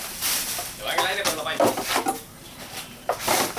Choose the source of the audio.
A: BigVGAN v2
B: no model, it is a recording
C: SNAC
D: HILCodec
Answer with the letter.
B